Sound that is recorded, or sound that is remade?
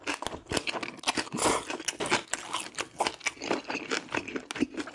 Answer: recorded